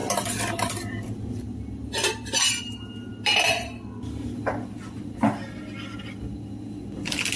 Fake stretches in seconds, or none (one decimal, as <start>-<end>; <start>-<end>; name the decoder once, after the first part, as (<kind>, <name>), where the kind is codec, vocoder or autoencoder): none